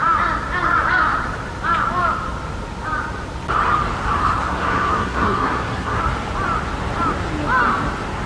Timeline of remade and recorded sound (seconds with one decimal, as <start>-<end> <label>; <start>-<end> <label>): 0.0-4.2 recorded; 4.2-6.0 remade; 6.0-8.3 recorded